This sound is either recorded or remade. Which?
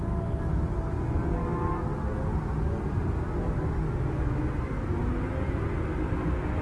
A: recorded